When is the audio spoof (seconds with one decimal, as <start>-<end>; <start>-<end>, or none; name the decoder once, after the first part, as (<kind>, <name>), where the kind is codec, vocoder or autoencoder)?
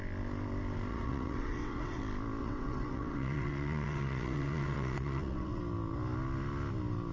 0.9-2.0 (vocoder, WaveNeXt); 2.4-5.6